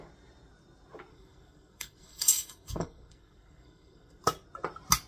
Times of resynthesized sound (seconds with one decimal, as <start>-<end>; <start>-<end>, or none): 1.1-4.2